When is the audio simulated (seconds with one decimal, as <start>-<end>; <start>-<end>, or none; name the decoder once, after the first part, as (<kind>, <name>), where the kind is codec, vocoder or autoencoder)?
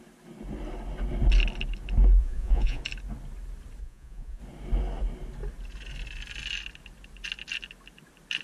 2.2-2.8 (vocoder, Vocos); 3.8-4.4